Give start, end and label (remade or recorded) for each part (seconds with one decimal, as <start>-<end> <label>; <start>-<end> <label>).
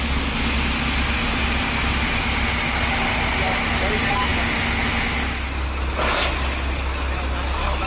0.0-7.9 recorded